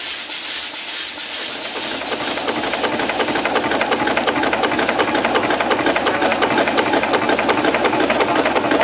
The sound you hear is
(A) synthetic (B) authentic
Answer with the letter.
B